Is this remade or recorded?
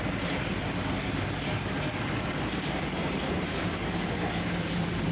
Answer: recorded